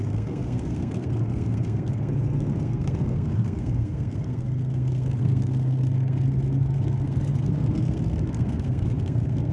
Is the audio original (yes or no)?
no